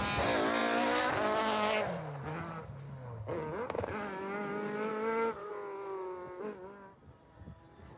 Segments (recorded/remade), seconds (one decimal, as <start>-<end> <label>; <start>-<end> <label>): 0.0-8.0 recorded